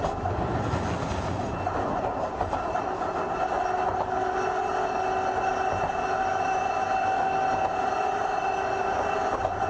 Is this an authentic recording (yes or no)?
yes